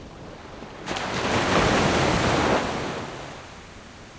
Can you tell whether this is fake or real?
real